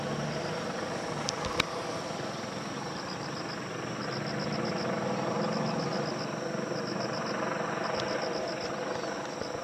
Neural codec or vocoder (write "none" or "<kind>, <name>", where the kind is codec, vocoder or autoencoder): none